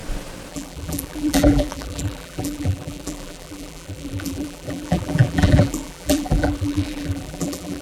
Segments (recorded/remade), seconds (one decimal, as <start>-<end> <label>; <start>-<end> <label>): 0.0-0.5 recorded; 0.5-7.8 remade